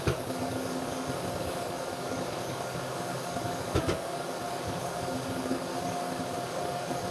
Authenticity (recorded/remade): remade